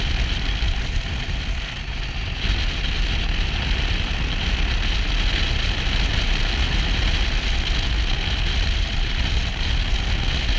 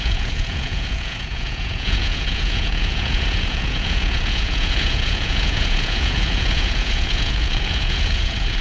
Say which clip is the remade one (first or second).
second